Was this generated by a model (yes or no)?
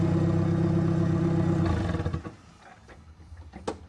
no